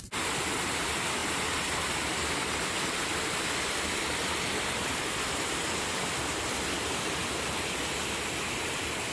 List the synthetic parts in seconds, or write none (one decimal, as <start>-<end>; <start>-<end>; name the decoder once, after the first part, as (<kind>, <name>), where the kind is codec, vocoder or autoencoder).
none

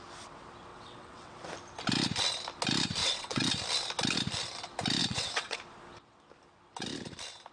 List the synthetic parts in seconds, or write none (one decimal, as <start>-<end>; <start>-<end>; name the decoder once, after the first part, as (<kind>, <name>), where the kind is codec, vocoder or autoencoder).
0.7-1.3 (vocoder, WaveNeXt); 3.0-3.5; 5.0-5.6

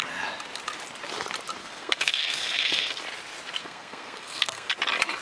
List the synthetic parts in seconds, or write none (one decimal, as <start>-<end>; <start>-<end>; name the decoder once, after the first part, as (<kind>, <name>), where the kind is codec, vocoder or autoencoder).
1.6-3.0 (codec, SNAC); 3.6-4.7

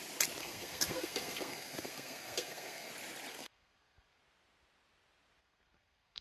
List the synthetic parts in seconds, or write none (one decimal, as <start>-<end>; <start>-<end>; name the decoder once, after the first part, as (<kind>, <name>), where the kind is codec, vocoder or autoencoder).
0.4-2.9 (codec, SNAC); 3.3-4.2; 5.4-6.2